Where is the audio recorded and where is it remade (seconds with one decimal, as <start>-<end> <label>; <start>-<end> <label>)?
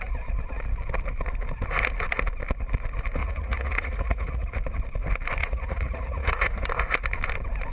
0.0-3.2 recorded; 3.2-4.5 remade; 4.5-5.4 recorded; 5.4-6.6 remade; 6.6-7.7 recorded